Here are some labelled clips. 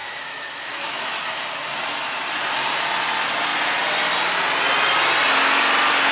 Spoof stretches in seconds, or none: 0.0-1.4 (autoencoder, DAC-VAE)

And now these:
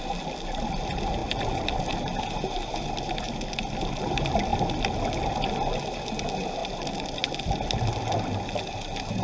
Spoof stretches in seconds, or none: none

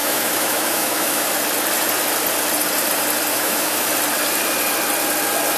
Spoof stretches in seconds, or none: 0.0-1.3 (autoencoder, DAC-VAE); 3.3-3.9

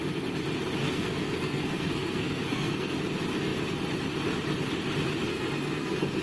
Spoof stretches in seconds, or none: 0.8-2.9 (codec, SNAC); 5.3-6.2

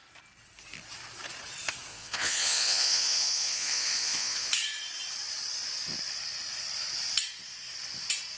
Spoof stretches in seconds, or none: 1.9-4.5 (vocoder, Vocos)

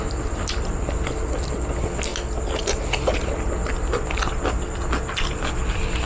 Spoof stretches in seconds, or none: none

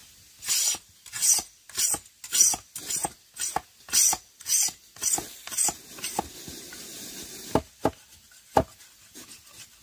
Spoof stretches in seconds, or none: 6.9-7.7 (vocoder, BigVGAN v2)

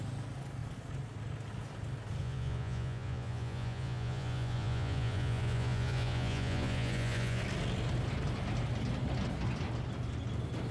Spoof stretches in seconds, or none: 2.2-7.4 (vocoder, Vocos)